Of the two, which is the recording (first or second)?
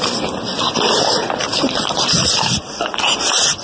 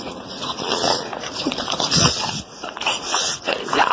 first